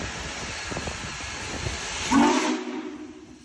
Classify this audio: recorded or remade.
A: recorded